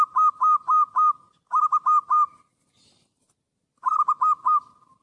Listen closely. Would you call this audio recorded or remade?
recorded